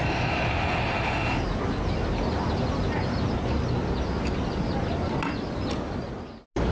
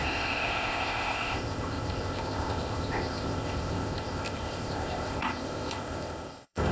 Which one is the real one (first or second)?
first